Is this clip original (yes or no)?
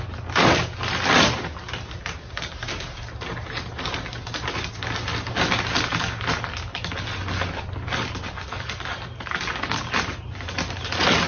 yes